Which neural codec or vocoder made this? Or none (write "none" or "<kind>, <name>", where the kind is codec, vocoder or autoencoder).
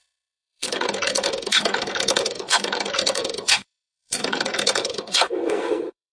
codec, SNAC